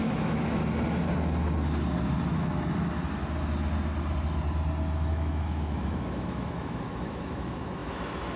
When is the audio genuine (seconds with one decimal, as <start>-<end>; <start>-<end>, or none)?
0.6-5.1